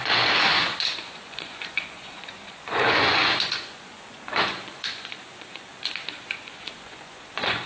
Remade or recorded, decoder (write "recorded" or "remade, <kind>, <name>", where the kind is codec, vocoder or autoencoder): remade, vocoder, Vocos